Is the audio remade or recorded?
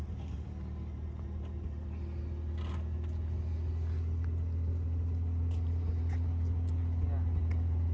recorded